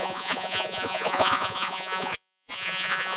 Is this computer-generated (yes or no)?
yes